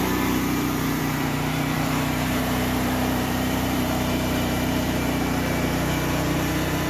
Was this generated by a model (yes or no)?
yes